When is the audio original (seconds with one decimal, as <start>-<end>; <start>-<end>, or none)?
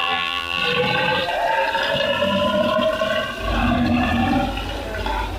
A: 0.6-5.4